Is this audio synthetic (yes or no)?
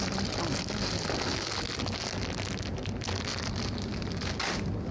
no